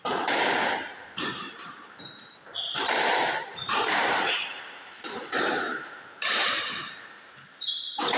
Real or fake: fake